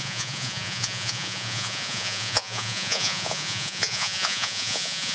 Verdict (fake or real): fake